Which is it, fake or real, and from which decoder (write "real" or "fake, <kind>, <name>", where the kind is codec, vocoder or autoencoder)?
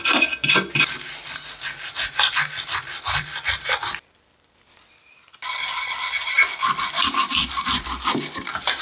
real